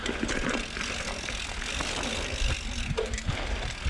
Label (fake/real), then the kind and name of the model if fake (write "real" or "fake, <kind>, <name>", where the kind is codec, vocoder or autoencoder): real